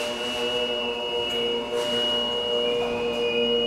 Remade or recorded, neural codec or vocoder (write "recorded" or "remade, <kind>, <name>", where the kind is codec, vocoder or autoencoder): recorded